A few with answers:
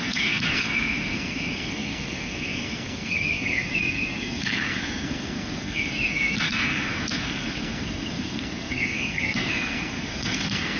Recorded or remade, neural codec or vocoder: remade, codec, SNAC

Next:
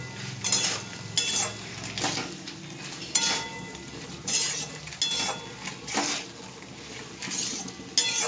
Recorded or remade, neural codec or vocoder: recorded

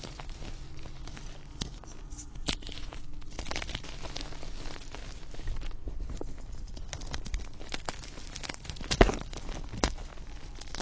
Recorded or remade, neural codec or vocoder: recorded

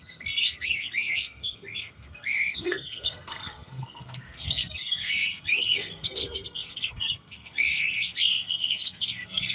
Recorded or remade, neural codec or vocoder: remade, codec, SNAC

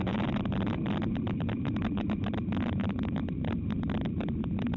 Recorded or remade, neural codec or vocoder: remade, vocoder, BigVGAN v2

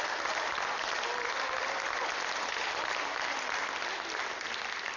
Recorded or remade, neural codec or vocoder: recorded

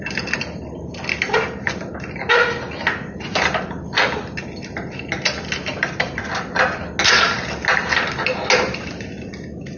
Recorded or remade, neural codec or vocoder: recorded